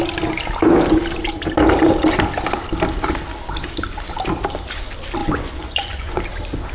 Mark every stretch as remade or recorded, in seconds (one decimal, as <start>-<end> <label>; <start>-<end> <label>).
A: 0.0-5.2 recorded; 5.2-6.2 remade; 6.2-6.7 recorded